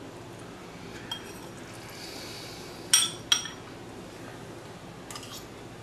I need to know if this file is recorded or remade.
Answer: recorded